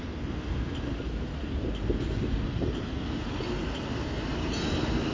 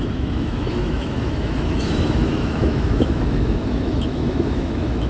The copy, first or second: second